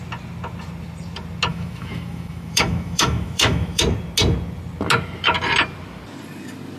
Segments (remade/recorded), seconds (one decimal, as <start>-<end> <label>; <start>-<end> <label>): 0.0-1.5 recorded; 1.5-3.8 remade; 3.8-6.8 recorded